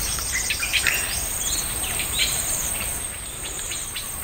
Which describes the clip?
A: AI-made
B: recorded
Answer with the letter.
A